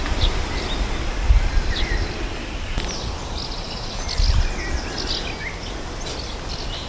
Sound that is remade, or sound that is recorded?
recorded